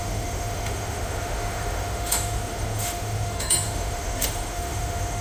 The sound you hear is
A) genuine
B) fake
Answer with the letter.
B